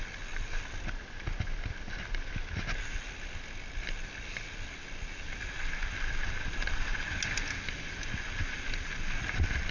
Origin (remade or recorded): recorded